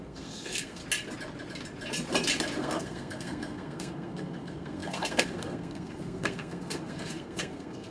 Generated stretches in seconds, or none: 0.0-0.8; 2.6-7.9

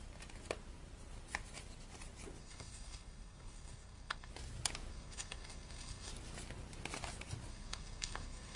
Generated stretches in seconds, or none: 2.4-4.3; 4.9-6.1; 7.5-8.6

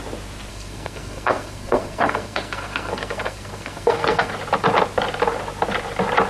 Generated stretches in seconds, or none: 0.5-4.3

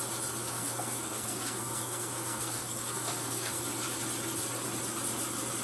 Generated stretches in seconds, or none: 0.4-3.6